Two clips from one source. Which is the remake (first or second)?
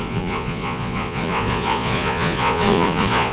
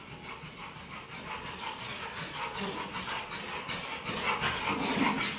first